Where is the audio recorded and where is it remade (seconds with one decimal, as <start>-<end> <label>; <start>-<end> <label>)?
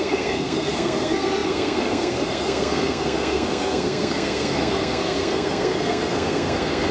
0.0-6.9 remade